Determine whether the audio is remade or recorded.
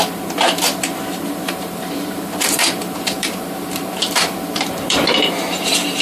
remade